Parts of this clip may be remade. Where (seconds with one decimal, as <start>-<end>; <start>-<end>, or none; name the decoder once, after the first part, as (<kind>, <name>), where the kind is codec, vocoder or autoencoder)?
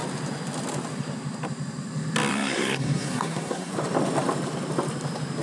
2.3-3.7 (codec, SNAC)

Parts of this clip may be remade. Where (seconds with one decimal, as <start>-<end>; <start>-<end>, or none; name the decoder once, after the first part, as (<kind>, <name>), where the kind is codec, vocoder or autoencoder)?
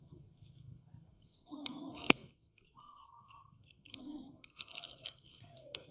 0.0-5.9 (codec, SNAC)